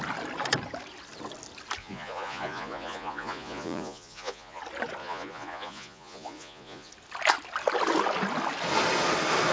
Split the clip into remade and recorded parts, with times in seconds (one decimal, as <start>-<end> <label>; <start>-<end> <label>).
0.0-1.8 recorded; 1.8-4.6 remade; 4.6-5.0 recorded; 5.0-6.9 remade; 6.9-9.5 recorded